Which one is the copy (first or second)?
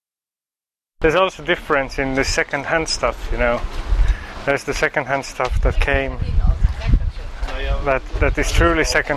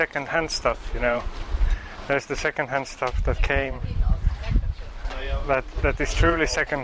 second